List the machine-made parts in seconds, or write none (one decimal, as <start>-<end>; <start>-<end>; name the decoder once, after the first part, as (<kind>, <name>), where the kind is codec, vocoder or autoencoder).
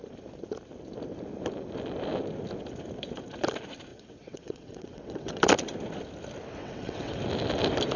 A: 3.9-5.4 (vocoder, WaveNeXt); 6.6-7.2